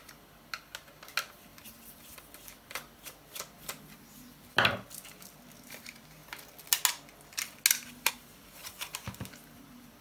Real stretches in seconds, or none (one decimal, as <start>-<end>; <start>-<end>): 0.0-1.5; 2.2-10.0